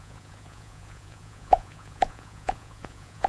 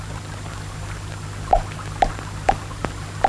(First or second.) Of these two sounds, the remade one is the first